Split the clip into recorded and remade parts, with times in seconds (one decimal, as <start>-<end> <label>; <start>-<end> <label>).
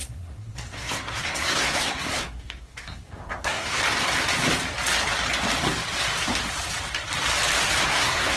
0.0-3.8 remade; 3.8-7.9 recorded; 7.9-8.4 remade